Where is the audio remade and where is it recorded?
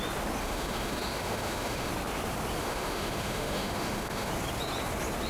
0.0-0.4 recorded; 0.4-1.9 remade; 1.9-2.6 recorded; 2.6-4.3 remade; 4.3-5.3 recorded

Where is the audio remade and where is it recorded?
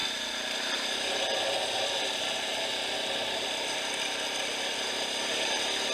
0.0-5.9 recorded